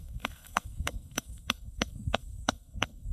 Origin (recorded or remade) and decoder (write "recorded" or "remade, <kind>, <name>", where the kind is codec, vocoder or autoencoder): remade, codec, SNAC